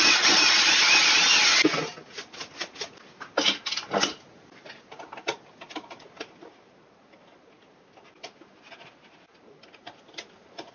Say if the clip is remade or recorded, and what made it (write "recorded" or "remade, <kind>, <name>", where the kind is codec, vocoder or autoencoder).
recorded